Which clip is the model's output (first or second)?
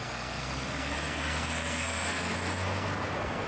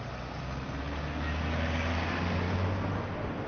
first